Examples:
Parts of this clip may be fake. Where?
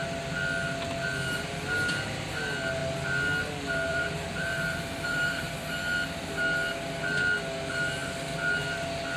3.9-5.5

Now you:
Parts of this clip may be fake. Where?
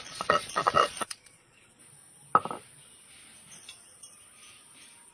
0.0-1.8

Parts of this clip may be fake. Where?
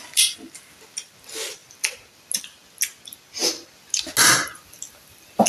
none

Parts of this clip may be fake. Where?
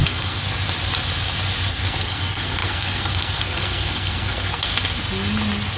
0.0-0.4; 1.7-4.7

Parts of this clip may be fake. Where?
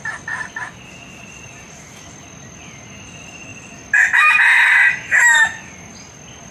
none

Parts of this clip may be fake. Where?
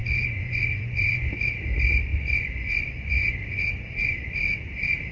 0.0-1.3; 2.1-4.3